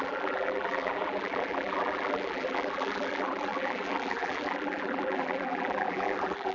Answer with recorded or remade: remade